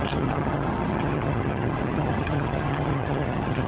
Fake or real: fake